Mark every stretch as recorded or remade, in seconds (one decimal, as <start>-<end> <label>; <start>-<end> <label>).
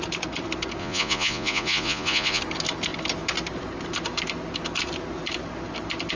0.0-0.8 recorded; 0.8-2.4 remade; 2.4-6.2 recorded